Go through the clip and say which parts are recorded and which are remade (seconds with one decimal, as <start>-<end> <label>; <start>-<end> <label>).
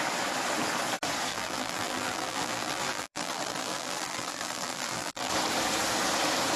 0.0-1.3 recorded; 1.3-5.3 remade; 5.3-6.6 recorded